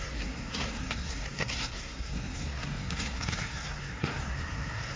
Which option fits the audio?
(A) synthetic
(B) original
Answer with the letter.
A